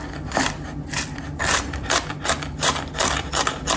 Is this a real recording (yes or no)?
yes